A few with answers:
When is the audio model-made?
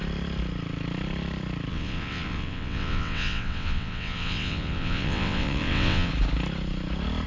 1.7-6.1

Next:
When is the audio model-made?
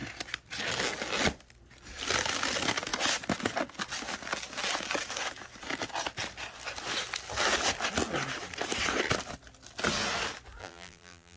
10.6-11.4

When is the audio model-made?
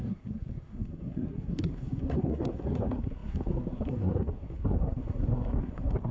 0.0-6.1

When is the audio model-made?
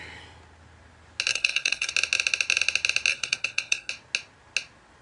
1.3-1.9; 3.1-3.9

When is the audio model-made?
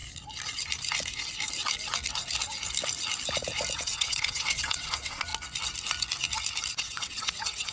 3.8-5.3; 6.7-7.7